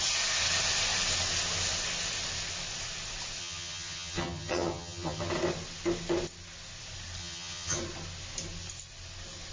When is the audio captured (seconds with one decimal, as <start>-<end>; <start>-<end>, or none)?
0.0-3.4; 5.3-7.2; 7.8-9.5